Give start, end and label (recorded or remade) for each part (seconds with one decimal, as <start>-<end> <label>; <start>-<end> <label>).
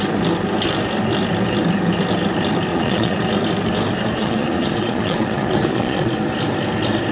0.0-2.7 recorded; 2.7-3.2 remade; 3.2-4.2 recorded; 4.2-6.1 remade; 6.1-7.1 recorded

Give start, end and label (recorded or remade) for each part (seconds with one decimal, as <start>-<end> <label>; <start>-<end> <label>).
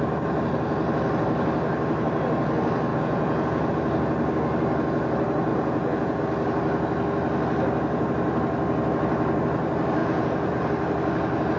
0.0-2.9 recorded; 2.9-3.7 remade; 3.7-5.5 recorded; 5.5-6.2 remade; 6.2-10.0 recorded; 10.0-10.5 remade; 10.5-11.6 recorded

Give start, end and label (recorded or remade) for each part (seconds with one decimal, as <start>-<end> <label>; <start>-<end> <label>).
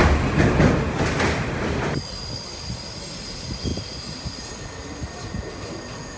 0.0-6.2 recorded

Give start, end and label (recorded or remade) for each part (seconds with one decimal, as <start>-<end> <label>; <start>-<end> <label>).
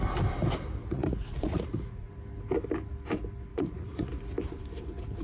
0.0-0.8 recorded; 0.8-2.1 remade; 2.1-3.5 recorded; 3.5-4.1 remade; 4.1-5.2 recorded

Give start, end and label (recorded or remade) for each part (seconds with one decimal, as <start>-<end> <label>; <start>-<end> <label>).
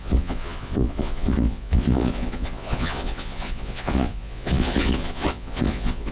0.0-6.1 remade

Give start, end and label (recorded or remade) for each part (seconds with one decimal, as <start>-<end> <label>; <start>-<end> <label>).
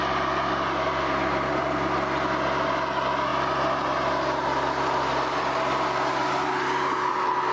0.0-7.5 recorded